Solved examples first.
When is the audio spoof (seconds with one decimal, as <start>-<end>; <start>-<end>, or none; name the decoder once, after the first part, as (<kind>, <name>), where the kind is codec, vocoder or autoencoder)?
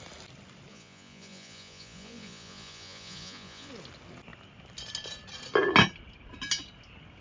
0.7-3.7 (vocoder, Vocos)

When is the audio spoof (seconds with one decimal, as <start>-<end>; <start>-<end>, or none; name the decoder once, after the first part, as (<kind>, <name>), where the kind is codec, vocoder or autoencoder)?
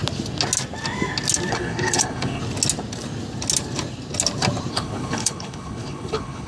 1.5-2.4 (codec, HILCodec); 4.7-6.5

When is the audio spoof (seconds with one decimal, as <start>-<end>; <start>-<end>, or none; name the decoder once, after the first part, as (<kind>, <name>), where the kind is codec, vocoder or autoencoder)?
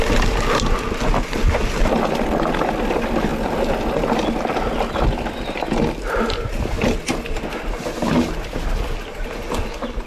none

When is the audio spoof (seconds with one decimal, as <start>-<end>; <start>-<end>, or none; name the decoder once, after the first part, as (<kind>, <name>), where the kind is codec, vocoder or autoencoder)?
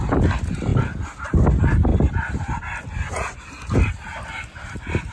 none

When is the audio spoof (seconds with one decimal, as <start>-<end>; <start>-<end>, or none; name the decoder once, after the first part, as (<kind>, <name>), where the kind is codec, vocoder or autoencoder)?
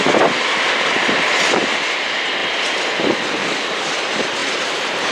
3.4-3.9 (codec, DAC)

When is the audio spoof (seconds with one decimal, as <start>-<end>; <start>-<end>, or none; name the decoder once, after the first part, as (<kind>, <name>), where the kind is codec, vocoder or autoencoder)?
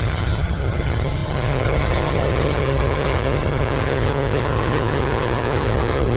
0.0-6.2 (vocoder, HiFi-GAN)